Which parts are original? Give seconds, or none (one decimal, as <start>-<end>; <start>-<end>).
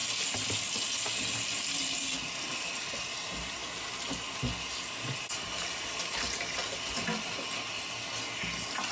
0.0-8.9